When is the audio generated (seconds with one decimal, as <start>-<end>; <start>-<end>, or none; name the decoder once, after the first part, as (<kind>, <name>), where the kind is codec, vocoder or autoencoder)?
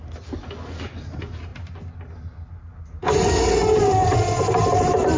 none